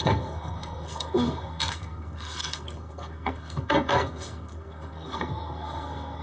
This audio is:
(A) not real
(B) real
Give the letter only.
A